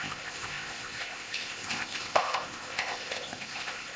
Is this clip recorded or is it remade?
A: remade